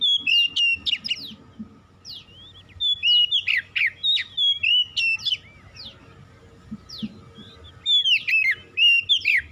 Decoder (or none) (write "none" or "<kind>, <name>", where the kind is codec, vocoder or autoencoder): none